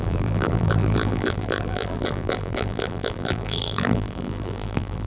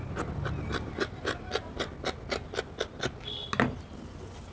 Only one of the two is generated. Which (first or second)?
first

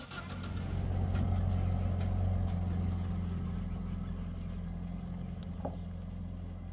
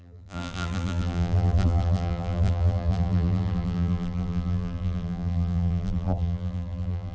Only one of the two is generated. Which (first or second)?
second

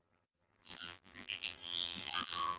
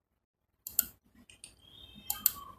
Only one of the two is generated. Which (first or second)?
first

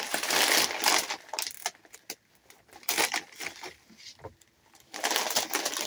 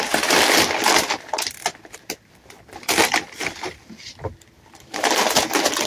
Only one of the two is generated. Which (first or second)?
second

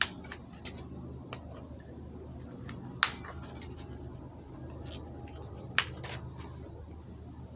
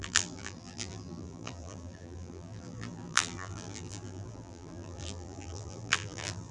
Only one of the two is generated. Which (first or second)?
second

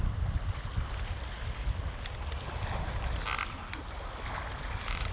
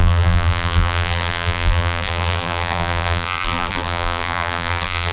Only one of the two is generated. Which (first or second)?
second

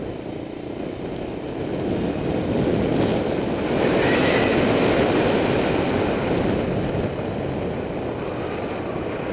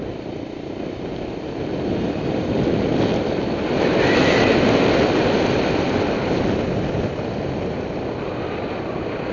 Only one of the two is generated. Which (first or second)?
second